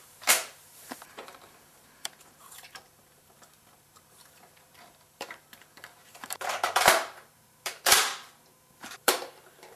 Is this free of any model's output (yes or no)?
no